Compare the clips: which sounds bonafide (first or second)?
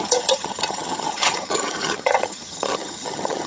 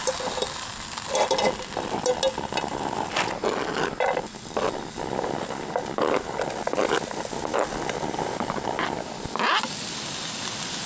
second